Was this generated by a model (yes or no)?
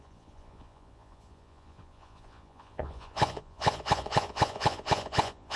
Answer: yes